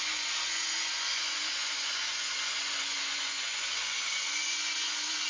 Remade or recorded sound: remade